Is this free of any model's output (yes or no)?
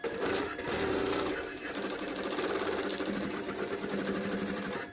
yes